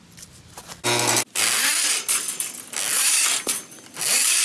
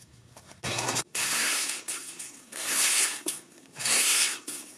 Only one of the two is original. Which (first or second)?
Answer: first